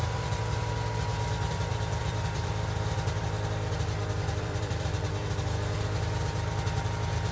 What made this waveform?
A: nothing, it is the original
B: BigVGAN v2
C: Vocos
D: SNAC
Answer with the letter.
B